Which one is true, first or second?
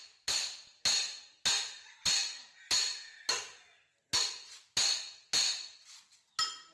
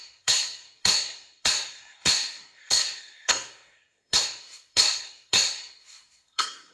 first